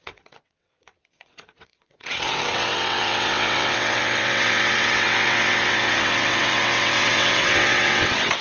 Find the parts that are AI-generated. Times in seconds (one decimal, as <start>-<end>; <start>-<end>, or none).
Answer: 0.0-8.4